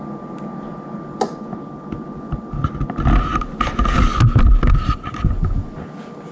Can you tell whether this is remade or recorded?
recorded